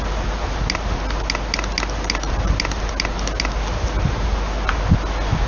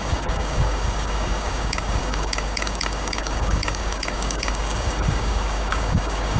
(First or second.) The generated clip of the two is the second